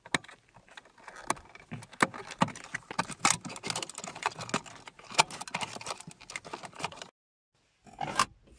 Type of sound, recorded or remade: recorded